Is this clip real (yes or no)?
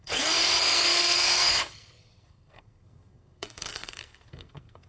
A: no